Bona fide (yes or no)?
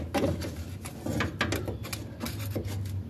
yes